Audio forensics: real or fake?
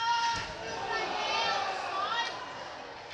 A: real